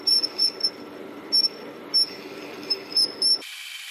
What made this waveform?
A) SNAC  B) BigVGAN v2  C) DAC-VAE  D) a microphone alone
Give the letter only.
D